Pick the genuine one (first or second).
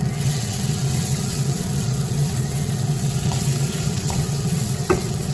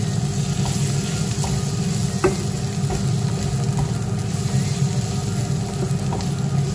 second